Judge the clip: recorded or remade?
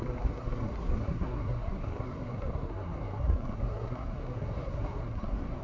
remade